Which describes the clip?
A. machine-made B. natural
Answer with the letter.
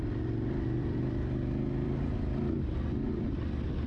A